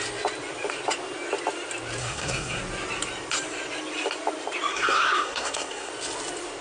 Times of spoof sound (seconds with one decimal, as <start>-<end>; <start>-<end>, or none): 2.0-2.6; 4.7-5.9

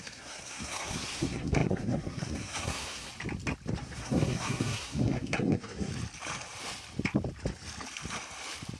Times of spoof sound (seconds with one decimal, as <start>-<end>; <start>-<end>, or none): 0.0-3.1; 3.8-5.9

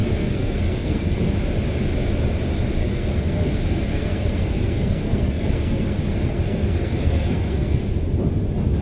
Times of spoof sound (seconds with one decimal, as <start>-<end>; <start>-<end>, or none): 0.0-1.2; 2.8-7.8